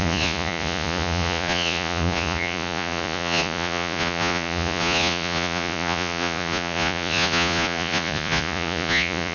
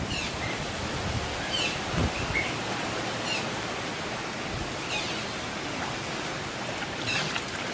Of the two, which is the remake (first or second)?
first